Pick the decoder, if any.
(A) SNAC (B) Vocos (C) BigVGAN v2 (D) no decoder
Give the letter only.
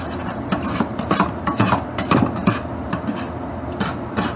C